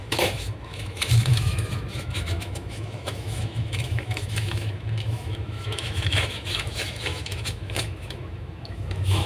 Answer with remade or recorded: remade